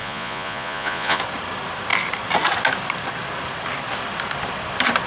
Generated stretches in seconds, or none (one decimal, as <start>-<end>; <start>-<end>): 0.0-1.2

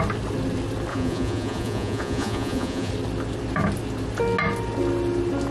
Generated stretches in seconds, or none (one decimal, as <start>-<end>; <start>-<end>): 0.9-2.9

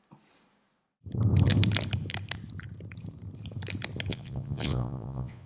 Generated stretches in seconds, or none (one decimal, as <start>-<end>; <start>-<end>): 4.1-5.5

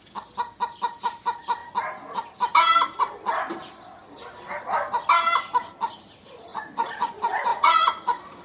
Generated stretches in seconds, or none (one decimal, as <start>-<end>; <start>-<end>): 6.5-7.1; 7.5-8.4

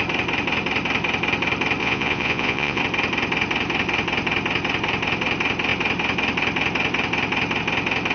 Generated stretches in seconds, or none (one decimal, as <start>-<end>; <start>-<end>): 1.8-2.8

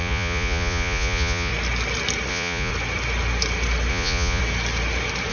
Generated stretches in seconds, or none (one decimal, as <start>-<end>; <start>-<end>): 0.0-1.5; 2.3-2.7; 3.9-4.4

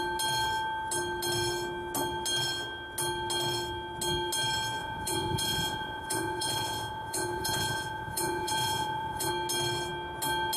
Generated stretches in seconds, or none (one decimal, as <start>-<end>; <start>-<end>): 4.8-9.3

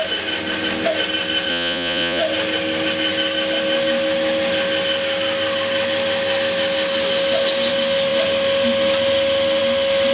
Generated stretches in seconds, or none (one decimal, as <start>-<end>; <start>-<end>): 1.5-2.2